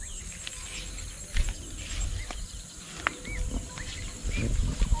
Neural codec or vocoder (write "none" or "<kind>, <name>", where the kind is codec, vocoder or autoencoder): none